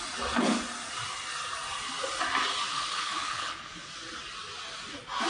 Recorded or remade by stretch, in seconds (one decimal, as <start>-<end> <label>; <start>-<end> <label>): 0.0-2.7 recorded; 2.7-3.9 remade; 3.9-5.3 recorded